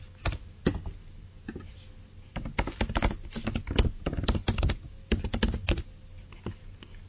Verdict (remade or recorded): recorded